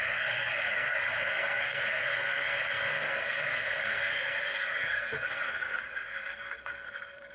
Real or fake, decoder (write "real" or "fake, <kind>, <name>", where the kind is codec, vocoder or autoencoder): fake, codec, SNAC